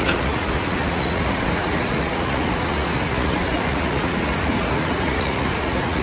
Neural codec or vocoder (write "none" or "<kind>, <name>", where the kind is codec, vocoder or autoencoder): vocoder, Vocos